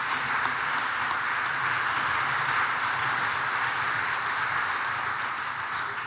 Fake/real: real